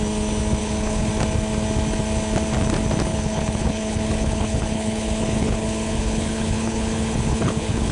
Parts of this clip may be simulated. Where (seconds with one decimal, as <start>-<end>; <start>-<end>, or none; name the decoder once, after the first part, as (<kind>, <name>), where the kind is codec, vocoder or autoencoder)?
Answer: 0.6-1.1 (codec, HILCodec); 3.1-7.9